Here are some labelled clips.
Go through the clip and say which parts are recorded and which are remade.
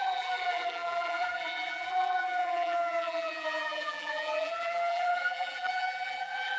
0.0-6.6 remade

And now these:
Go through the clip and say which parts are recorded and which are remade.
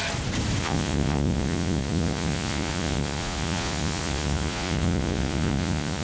0.0-0.6 recorded; 0.6-6.0 remade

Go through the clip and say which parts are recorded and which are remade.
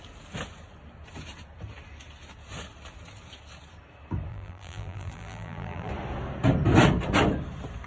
0.0-4.3 recorded; 4.3-5.9 remade; 5.9-7.9 recorded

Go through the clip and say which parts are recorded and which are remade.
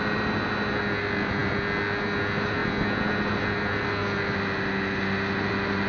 0.0-5.9 recorded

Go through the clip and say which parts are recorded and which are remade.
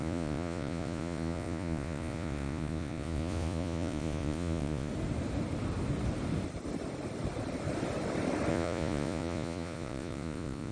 0.0-4.9 remade; 4.9-8.5 recorded; 8.5-10.7 remade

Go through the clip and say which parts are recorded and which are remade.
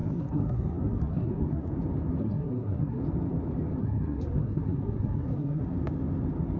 0.0-1.7 remade; 1.7-2.2 recorded; 2.2-3.0 remade; 3.0-3.8 recorded; 3.8-5.6 remade; 5.6-6.6 recorded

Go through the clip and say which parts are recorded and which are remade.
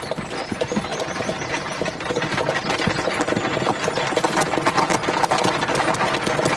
0.0-6.6 recorded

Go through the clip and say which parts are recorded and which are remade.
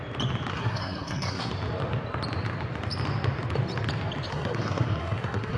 0.0-0.5 recorded; 0.5-1.5 remade; 1.5-4.3 recorded; 4.3-5.6 remade